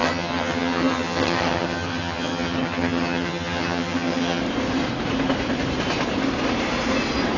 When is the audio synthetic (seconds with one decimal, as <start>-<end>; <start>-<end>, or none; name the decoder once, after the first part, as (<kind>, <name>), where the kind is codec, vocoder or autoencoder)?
0.0-4.4 (vocoder, HiFi-GAN)